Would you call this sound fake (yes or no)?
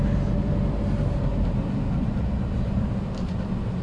no